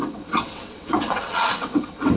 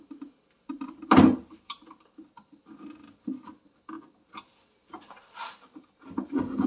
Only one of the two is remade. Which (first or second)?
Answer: first